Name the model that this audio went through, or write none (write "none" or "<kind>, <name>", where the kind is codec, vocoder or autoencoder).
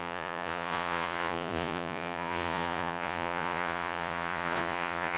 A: vocoder, Vocos